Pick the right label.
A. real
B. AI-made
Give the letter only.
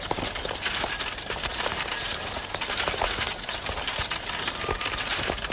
A